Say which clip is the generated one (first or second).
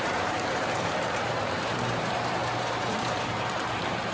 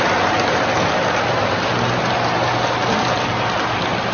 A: first